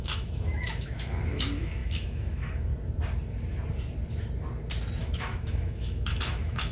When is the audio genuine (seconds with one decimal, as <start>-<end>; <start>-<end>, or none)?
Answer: 2.7-5.0